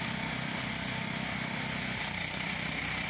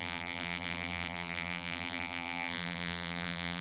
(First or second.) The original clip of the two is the first